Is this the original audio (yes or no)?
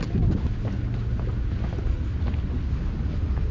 yes